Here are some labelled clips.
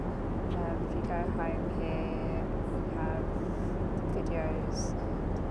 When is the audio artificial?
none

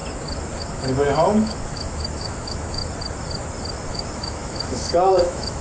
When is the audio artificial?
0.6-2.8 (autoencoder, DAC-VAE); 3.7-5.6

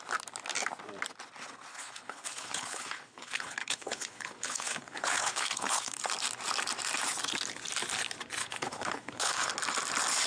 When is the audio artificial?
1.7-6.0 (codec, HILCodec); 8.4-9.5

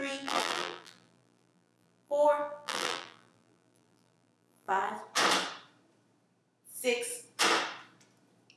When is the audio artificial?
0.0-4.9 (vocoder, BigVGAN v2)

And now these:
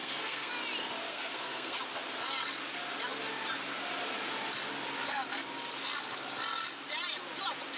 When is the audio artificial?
0.0-0.5 (codec, SNAC); 1.1-1.8

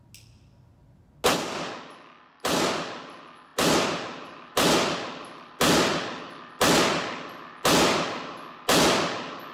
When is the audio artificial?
none

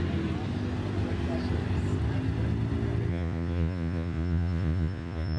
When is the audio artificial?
3.1-5.4 (vocoder, Vocos)